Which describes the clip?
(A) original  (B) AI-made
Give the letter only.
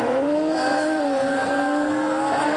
B